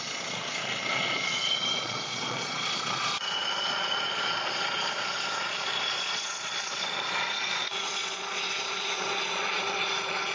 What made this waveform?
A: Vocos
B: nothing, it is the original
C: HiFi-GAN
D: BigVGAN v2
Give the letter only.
A